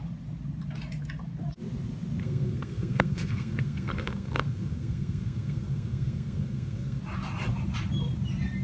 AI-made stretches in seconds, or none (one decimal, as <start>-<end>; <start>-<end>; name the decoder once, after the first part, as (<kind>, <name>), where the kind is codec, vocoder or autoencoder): 2.2-7.0 (codec, SNAC)